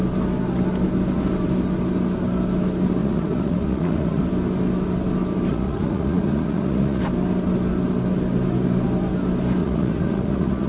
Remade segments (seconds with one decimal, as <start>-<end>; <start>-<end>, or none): 3.0-4.2; 5.5-7.0; 9.6-10.7